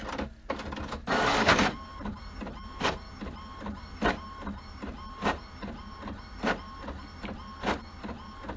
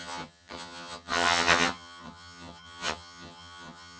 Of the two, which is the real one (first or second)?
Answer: first